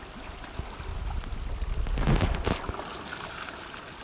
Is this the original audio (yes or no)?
yes